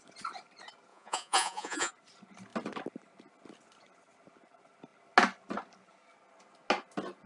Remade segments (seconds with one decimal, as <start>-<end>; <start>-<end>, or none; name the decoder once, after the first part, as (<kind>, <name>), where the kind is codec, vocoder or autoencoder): 0.9-1.9 (vocoder, Vocos)